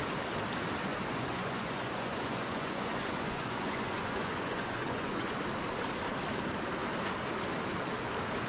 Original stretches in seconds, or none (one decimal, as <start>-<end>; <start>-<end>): 0.0-0.9; 5.4-8.5